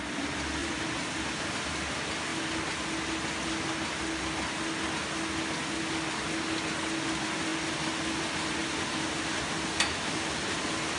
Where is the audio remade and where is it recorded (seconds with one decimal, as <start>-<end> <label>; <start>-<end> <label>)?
0.0-0.6 recorded; 0.6-1.7 remade; 1.7-8.6 recorded; 8.6-9.3 remade; 9.3-11.0 recorded